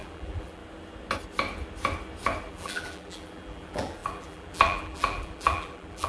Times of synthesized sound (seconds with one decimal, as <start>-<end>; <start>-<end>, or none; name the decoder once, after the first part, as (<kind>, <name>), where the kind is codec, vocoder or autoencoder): 0.0-0.6 (vocoder, BigVGAN v2); 2.5-6.1